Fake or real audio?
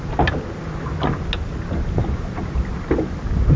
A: real